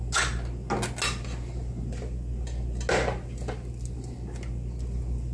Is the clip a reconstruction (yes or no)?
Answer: no